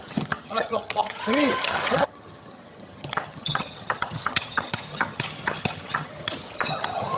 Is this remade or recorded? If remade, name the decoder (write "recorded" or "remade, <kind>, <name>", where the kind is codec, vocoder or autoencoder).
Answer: remade, vocoder, HiFi-GAN